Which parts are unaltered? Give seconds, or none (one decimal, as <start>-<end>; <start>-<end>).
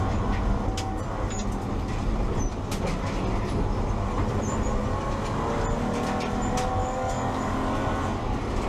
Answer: 0.0-6.8; 7.7-8.7